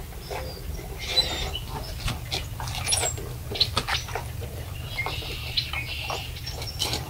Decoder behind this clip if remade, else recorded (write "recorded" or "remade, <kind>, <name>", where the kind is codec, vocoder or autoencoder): recorded